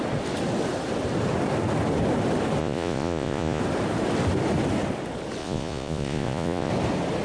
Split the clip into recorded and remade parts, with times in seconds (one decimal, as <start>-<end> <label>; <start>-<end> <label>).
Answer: 0.0-2.6 recorded; 2.6-3.6 remade; 3.6-5.4 recorded; 5.4-6.7 remade; 6.7-7.2 recorded